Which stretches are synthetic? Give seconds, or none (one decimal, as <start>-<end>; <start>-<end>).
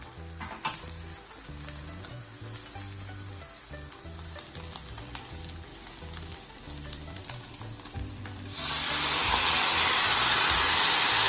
5.7-10.4